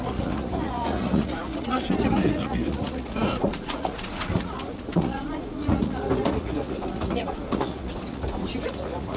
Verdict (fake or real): fake